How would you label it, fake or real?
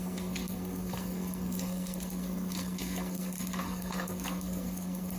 fake